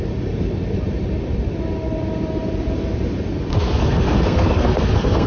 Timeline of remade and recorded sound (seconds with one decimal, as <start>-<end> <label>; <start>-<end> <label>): 0.0-3.5 recorded; 3.5-5.3 remade